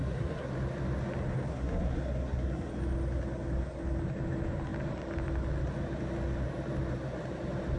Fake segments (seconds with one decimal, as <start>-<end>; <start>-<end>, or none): 0.0-0.5; 1.5-2.7